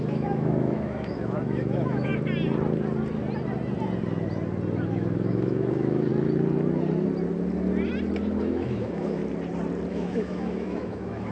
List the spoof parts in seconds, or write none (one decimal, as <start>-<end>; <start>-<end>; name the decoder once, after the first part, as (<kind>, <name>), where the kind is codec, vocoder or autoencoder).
0.0-2.1 (autoencoder, DAC-VAE); 4.9-6.1; 8.4-9.2; 9.9-11.3